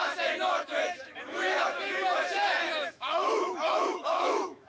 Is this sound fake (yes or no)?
yes